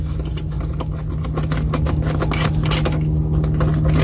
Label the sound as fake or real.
real